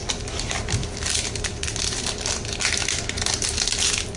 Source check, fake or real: real